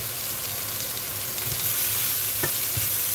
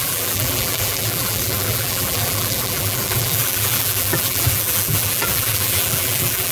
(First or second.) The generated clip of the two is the second